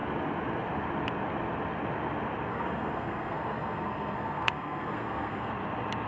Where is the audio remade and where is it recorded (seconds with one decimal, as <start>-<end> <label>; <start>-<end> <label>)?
0.0-2.5 recorded; 2.5-5.5 remade; 5.5-6.1 recorded